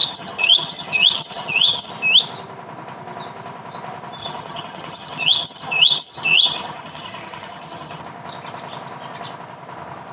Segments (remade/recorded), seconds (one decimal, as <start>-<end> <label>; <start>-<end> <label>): 0.0-1.9 remade; 1.9-4.2 recorded; 4.2-8.0 remade; 8.0-10.1 recorded